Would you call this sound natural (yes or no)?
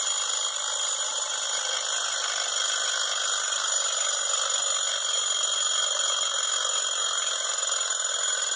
yes